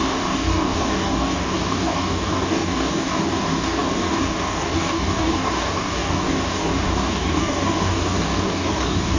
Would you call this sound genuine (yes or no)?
no